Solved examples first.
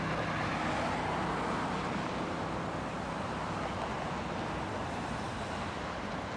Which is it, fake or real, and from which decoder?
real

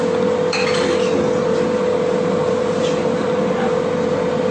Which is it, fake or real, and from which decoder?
real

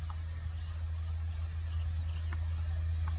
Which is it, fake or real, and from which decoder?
real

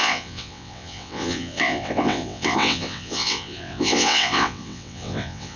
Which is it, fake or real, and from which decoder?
fake, vocoder, WaveNeXt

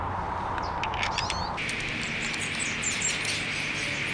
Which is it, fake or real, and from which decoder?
real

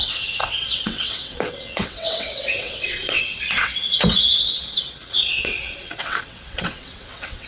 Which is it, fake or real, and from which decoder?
fake, vocoder, WaveNeXt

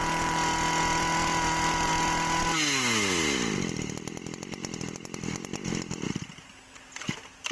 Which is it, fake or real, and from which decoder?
real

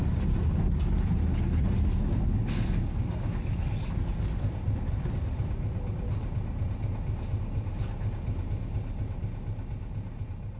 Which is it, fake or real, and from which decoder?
real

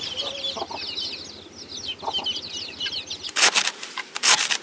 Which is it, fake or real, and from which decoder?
real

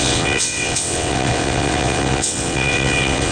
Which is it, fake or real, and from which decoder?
fake, vocoder, WaveNeXt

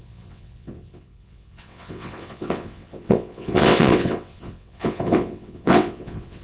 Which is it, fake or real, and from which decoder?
fake, vocoder, WaveNeXt